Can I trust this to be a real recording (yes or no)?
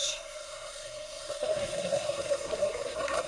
no